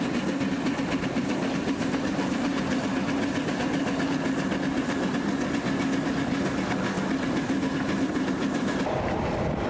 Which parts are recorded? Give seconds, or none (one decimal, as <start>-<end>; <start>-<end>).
0.0-9.7